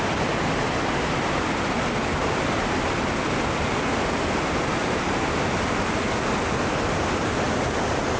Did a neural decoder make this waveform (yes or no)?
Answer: no